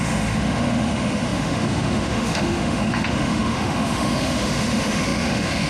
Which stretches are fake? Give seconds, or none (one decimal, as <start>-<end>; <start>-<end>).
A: 0.0-5.7